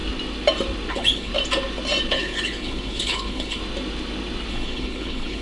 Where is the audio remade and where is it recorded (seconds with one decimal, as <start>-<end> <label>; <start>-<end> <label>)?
0.0-0.9 recorded; 0.9-1.3 remade; 1.3-2.1 recorded; 2.1-3.6 remade; 3.6-4.5 recorded; 4.5-5.4 remade